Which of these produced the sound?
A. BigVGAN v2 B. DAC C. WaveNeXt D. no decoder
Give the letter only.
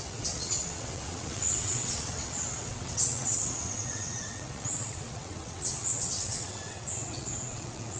C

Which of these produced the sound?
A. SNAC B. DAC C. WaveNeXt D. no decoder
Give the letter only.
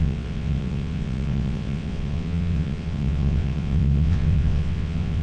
C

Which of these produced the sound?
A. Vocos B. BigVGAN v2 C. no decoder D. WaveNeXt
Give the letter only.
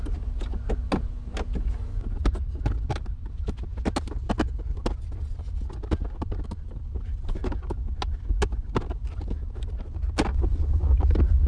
C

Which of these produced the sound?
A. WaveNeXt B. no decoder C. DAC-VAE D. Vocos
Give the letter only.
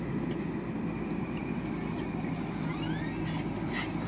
B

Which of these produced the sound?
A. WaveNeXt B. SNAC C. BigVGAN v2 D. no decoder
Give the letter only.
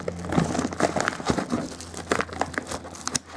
D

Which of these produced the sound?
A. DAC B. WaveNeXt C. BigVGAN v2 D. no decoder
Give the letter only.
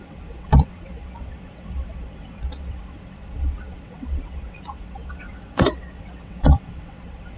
B